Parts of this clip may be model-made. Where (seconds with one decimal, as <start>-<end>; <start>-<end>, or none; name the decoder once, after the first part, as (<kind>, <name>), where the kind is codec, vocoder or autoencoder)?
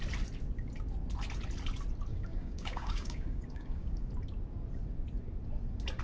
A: 2.1-4.1 (codec, DAC)